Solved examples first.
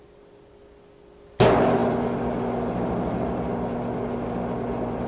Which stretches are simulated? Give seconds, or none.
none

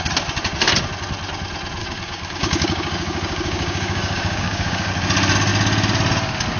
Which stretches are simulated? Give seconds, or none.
1.8-4.9

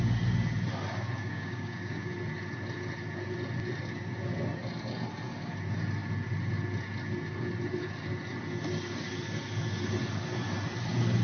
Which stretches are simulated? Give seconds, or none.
1.2-2.1